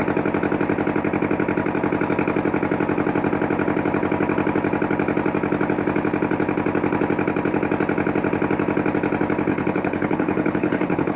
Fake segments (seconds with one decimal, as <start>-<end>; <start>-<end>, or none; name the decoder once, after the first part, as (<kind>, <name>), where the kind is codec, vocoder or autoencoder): 9.5-11.2 (codec, HILCodec)